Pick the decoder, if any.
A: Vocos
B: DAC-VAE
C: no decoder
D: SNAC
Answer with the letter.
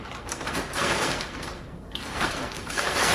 D